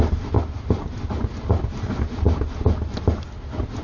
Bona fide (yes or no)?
yes